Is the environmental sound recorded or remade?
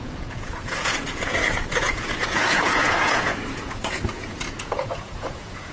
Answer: remade